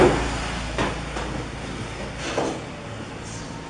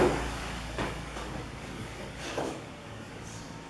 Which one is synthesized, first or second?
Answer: second